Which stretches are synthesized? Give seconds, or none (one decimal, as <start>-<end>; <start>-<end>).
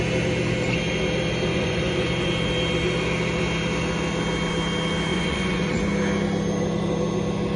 1.5-2.3; 5.1-5.7